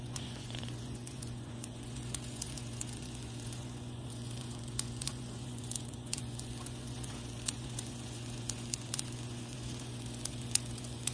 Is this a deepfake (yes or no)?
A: yes